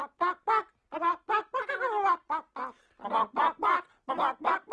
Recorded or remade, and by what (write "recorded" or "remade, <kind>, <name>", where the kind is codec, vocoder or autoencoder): recorded